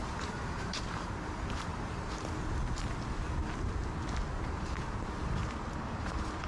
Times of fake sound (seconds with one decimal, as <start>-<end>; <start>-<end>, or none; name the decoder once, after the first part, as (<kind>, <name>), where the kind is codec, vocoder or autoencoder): 0.0-1.7 (vocoder, BigVGAN v2); 4.3-5.4; 6.0-6.5